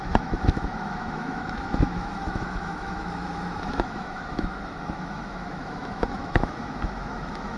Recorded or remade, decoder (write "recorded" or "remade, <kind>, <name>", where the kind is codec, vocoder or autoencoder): remade, autoencoder, DAC-VAE